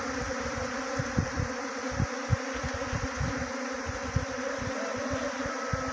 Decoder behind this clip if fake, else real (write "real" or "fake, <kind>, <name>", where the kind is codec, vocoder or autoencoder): fake, vocoder, BigVGAN v2